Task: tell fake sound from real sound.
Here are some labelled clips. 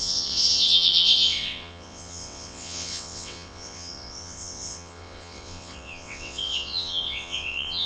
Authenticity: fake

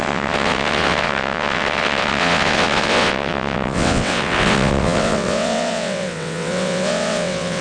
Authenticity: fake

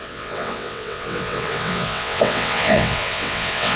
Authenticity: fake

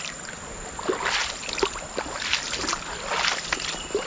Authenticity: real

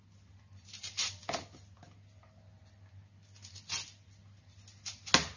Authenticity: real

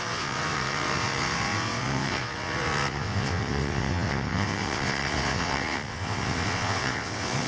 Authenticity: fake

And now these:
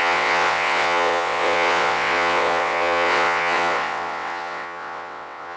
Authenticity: fake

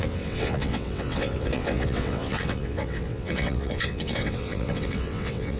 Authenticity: fake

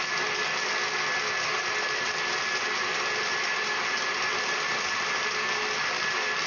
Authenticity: real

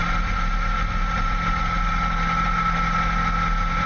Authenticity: real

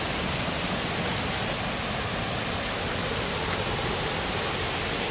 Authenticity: real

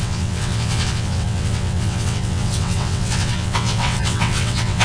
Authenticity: fake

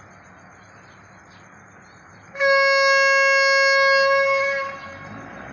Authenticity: real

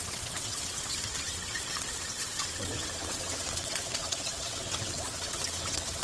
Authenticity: fake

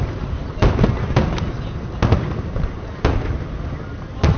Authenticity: real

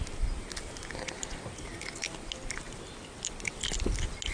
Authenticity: real